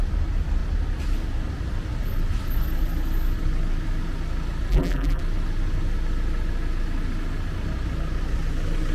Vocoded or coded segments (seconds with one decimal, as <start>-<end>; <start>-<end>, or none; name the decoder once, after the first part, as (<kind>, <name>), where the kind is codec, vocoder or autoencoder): 4.7-5.2 (vocoder, BigVGAN v2)